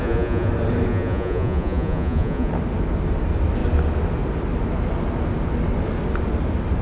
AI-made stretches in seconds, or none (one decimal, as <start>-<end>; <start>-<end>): 0.0-0.5; 0.9-2.5